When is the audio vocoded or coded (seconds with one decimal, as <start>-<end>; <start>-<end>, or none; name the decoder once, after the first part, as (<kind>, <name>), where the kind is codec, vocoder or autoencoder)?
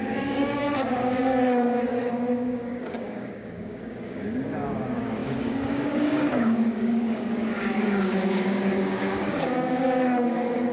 0.0-10.7 (codec, DAC)